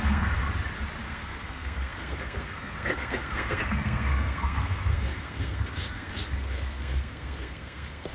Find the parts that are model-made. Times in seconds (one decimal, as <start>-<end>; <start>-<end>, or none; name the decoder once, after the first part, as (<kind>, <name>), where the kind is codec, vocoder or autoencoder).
0.0-0.4 (codec, SNAC); 1.1-8.1